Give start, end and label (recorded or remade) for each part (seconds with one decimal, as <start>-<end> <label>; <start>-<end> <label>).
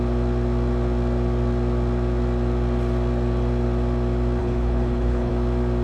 0.0-4.4 recorded; 4.4-5.3 remade; 5.3-5.8 recorded